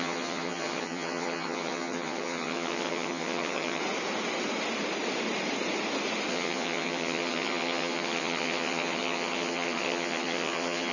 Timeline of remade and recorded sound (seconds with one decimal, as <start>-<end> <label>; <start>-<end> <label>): 0.0-3.8 remade; 3.8-6.3 recorded; 6.3-10.9 remade